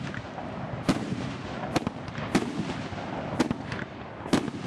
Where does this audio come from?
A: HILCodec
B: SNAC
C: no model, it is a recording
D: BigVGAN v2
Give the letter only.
C